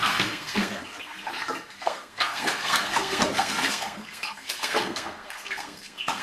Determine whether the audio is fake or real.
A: fake